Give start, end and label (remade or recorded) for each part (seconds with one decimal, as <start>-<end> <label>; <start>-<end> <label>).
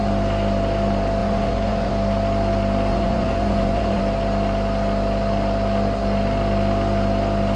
0.0-1.2 recorded; 1.2-1.9 remade; 1.9-2.9 recorded; 2.9-4.0 remade; 4.0-7.6 recorded